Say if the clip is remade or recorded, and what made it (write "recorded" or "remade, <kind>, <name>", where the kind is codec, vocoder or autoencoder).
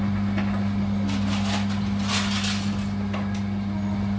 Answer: recorded